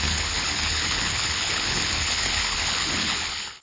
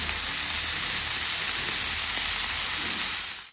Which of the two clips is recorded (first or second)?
second